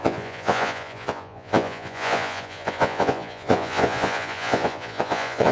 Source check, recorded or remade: remade